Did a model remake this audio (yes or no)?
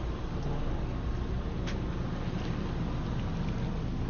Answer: no